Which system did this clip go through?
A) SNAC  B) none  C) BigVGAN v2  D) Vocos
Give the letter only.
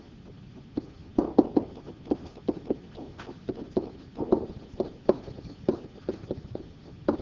B